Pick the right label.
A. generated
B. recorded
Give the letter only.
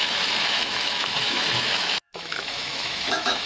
A